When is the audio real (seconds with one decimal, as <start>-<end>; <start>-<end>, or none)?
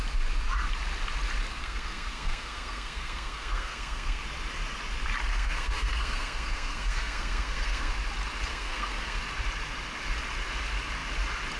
0.0-1.6; 4.2-5.3; 7.9-8.5; 9.2-11.6